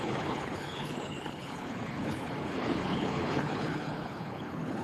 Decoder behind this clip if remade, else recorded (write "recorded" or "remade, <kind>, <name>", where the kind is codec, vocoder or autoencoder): remade, codec, HILCodec